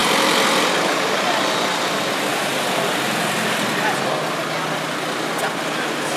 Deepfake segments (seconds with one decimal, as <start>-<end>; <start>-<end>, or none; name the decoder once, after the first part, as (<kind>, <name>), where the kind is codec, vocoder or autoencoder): none